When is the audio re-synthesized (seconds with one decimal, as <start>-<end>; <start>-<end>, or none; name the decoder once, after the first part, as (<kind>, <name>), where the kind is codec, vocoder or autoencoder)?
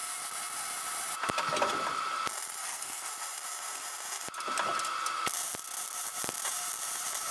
2.6-3.1 (codec, SNAC)